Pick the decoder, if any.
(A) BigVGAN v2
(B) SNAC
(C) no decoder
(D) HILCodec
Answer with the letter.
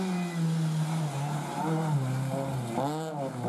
C